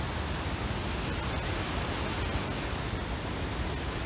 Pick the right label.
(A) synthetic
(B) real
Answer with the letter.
B